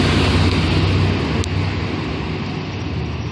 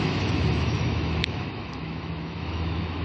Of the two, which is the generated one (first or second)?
second